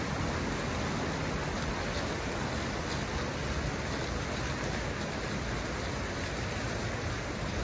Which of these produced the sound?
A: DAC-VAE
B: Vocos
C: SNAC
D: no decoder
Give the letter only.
D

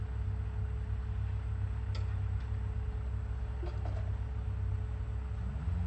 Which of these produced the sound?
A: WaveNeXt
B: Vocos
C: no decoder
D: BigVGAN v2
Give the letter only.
C